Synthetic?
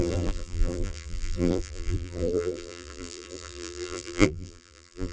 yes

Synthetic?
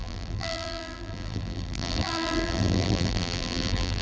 yes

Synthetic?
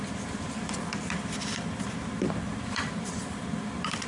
yes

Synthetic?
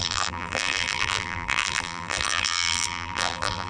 yes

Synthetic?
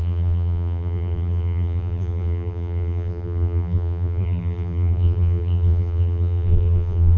yes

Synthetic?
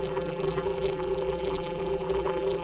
yes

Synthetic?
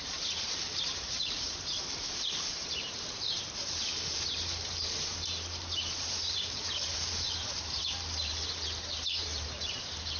yes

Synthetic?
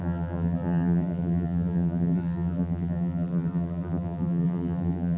yes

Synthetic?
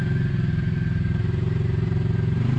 yes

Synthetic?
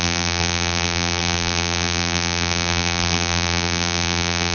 yes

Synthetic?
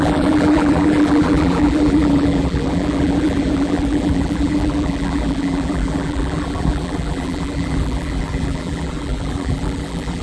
yes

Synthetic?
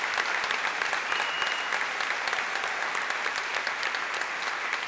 no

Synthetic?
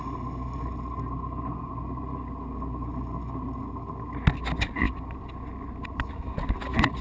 no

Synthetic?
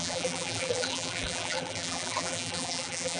yes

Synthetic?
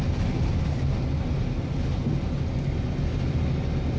no